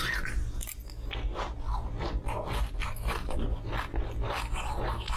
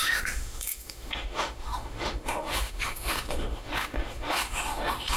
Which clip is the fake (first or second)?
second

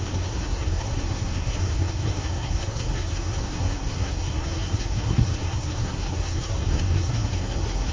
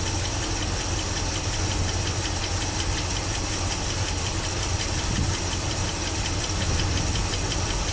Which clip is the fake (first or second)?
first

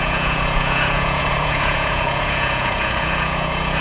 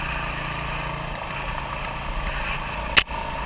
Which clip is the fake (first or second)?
first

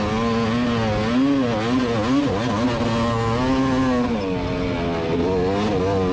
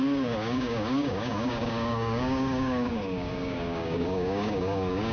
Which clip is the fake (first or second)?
second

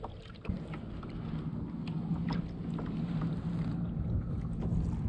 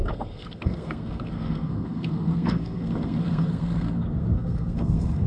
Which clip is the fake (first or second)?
second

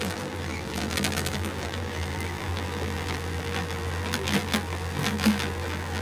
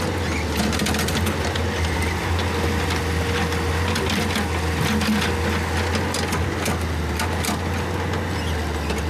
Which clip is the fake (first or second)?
first